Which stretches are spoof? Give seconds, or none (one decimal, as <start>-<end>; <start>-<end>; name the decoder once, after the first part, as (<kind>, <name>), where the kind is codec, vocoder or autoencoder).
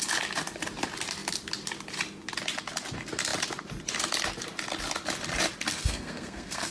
5.7-6.7 (codec, SNAC)